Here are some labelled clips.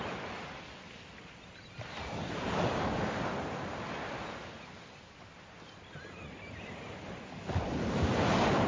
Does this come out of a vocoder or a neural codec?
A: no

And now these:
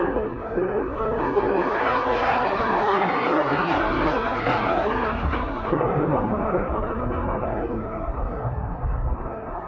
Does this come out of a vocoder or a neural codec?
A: yes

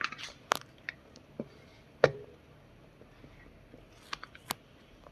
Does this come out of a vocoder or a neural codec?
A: no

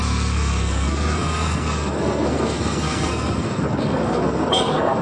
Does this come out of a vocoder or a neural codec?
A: yes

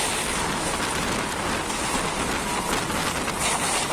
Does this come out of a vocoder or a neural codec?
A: no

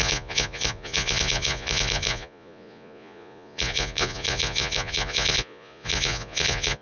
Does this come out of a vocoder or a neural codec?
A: yes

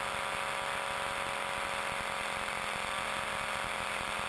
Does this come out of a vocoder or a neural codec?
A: no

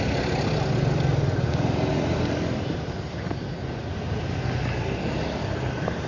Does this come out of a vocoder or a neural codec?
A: no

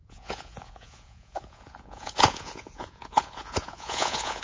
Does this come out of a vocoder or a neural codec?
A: yes